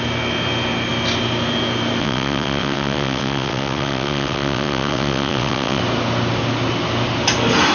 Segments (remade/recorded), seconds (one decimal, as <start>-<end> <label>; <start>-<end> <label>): 0.0-2.0 recorded; 2.0-5.8 remade; 5.8-7.7 recorded